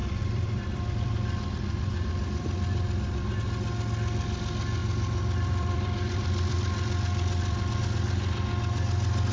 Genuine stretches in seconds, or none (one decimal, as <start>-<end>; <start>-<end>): 3.4-4.8; 7.8-9.3